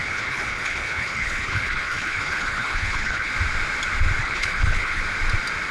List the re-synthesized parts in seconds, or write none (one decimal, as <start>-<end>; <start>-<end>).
0.0-3.3; 4.2-5.0